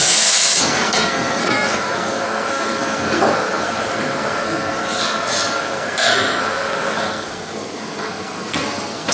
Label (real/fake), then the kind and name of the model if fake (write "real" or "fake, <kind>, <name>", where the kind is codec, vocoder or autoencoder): fake, codec, SNAC